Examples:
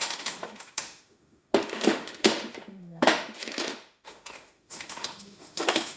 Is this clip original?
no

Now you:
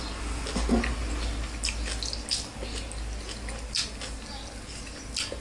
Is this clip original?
yes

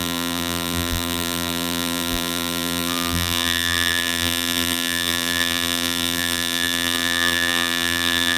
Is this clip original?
no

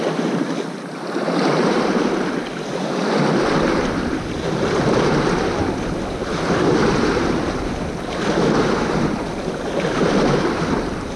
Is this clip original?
yes